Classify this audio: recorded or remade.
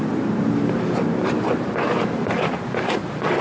remade